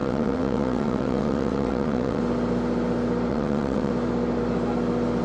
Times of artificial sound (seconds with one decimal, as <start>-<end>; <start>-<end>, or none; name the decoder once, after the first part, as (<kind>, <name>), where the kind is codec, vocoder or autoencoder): 0.0-2.2 (vocoder, WaveNeXt); 3.3-3.9